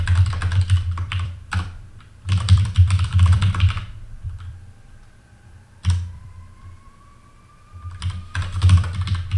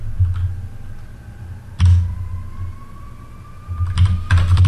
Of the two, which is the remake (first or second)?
first